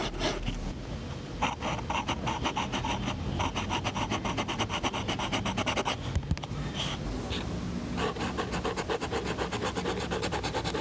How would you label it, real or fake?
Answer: real